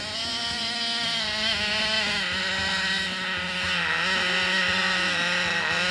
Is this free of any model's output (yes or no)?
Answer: yes